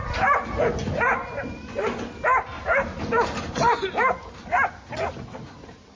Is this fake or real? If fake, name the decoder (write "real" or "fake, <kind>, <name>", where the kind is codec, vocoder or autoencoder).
fake, vocoder, BigVGAN v2